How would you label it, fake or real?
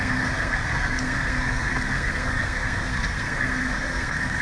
fake